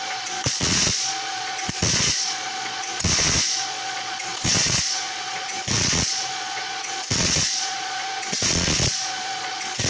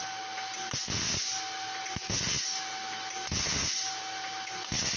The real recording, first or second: second